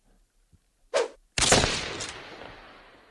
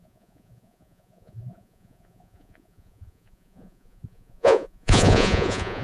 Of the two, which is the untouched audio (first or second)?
first